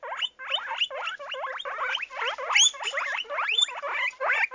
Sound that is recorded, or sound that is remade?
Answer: recorded